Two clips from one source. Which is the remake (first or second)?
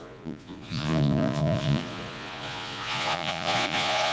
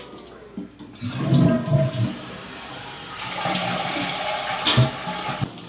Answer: first